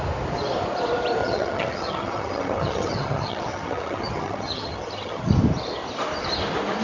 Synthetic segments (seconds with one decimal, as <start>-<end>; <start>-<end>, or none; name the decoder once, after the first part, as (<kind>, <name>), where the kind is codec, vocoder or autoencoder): 1.2-5.3 (vocoder, HiFi-GAN)